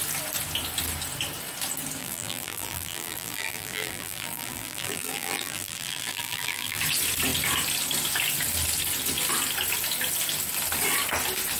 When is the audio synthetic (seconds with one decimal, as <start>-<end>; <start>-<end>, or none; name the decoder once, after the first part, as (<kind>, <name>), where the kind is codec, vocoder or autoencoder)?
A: 2.0-6.8 (vocoder, BigVGAN v2)